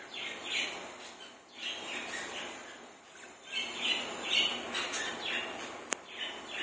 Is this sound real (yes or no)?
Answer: yes